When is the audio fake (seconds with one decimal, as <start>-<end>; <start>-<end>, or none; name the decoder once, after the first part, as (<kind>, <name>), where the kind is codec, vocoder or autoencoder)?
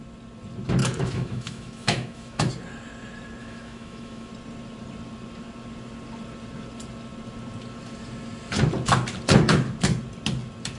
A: 0.8-2.5 (autoencoder, DAC-VAE); 3.4-4.3